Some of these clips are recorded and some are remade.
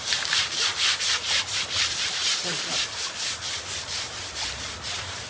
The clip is remade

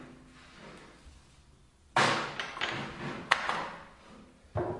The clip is recorded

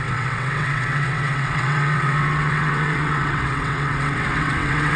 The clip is remade